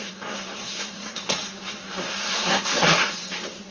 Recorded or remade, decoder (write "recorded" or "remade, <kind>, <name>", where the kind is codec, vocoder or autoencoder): remade, codec, SNAC